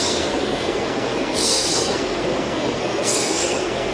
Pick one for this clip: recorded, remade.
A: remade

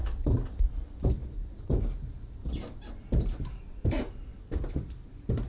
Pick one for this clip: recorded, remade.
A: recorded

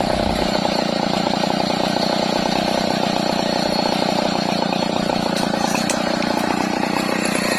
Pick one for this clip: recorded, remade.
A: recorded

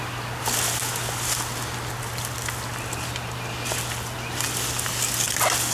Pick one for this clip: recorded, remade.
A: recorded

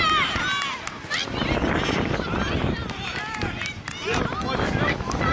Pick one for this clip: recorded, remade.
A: recorded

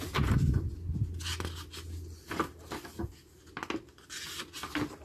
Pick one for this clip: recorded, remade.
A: recorded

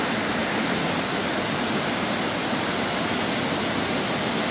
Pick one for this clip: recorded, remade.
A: recorded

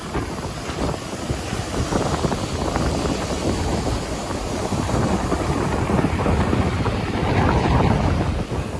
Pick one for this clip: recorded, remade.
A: recorded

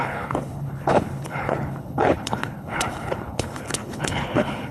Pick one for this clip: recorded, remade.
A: remade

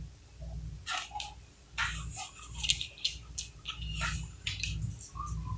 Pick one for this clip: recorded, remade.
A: recorded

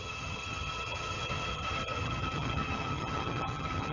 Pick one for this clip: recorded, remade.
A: remade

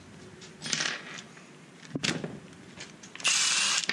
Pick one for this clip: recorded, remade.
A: recorded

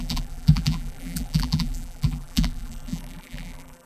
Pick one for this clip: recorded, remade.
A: remade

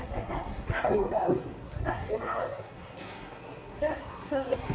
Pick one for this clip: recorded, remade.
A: remade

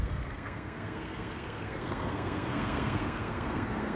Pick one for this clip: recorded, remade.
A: remade